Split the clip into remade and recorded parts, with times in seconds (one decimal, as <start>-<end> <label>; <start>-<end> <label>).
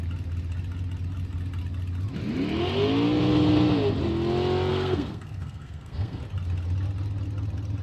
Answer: 0.0-4.7 recorded; 4.7-6.2 remade; 6.2-7.8 recorded